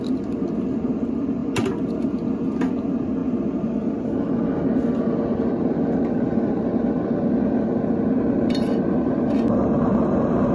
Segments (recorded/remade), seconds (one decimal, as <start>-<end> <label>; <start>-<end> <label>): 0.0-10.5 recorded